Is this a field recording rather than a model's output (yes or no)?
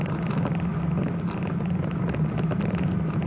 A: yes